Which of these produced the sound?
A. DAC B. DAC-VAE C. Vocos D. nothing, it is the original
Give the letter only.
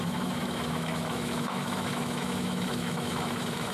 B